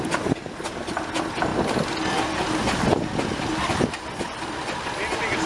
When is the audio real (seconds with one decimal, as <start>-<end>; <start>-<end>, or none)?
0.0-5.5